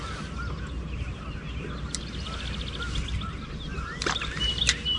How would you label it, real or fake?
real